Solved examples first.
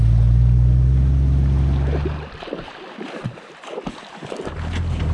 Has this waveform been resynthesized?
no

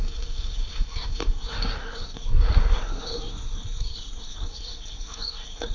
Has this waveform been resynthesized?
yes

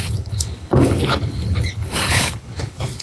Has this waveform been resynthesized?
yes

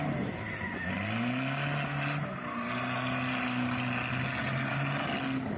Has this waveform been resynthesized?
no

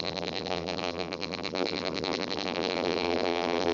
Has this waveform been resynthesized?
yes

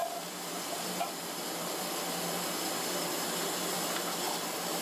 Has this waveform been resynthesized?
no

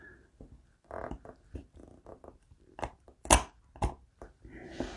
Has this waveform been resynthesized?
no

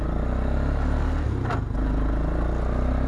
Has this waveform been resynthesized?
no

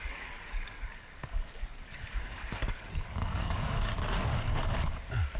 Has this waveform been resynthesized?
yes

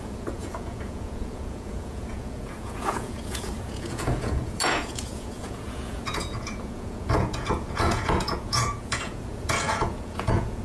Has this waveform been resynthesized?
yes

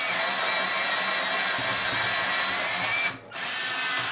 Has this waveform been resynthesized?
no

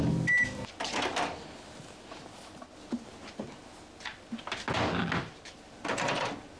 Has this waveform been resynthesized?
no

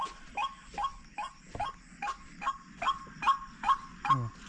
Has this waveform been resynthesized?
no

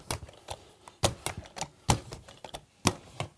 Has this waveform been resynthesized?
no